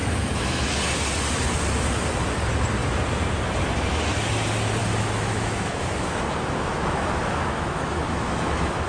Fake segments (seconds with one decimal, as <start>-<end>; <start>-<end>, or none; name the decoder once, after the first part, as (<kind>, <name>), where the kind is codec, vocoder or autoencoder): 0.0-0.7 (autoencoder, DAC-VAE); 4.8-8.9